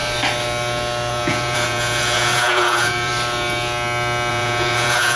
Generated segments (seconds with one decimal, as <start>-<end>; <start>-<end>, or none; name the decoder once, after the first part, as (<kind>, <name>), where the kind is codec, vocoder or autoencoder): 1.1-3.1 (vocoder, Vocos); 4.3-5.2